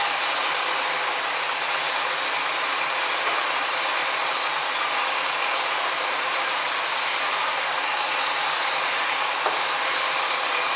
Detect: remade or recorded recorded